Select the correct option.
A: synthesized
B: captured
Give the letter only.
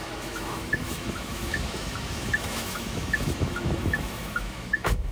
A